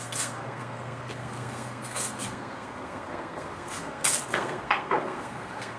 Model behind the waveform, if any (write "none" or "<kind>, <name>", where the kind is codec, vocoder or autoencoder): codec, SNAC